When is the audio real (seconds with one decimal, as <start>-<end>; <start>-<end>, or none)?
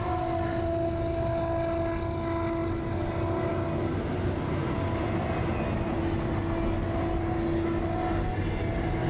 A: 0.0-9.1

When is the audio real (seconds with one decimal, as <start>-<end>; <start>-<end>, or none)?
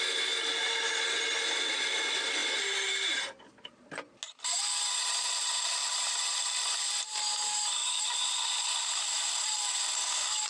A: 0.0-10.5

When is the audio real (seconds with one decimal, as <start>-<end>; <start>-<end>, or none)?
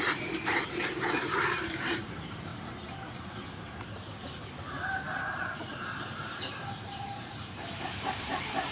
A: 2.5-5.2